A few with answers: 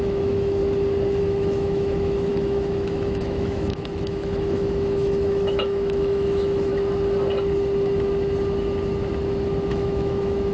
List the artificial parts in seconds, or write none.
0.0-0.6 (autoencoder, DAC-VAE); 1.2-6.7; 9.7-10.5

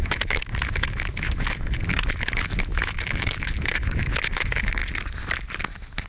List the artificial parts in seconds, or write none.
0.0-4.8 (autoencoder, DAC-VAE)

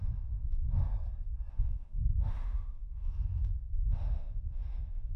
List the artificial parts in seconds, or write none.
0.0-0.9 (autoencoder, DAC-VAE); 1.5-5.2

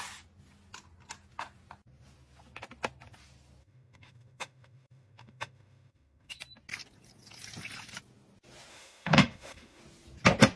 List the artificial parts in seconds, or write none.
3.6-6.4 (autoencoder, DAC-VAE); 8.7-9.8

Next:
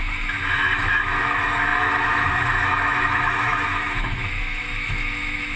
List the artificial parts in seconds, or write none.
0.0-5.6 (autoencoder, DAC-VAE)

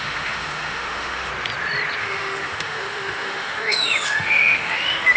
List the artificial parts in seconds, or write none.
0.0-1.3 (autoencoder, DAC-VAE); 2.0-5.2